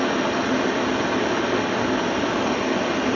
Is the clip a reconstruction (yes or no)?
no